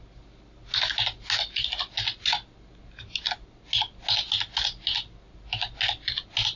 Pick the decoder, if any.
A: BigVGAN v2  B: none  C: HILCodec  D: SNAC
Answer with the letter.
B